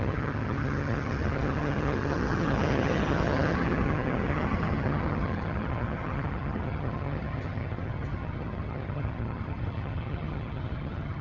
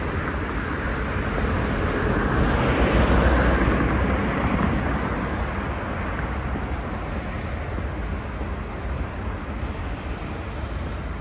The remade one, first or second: first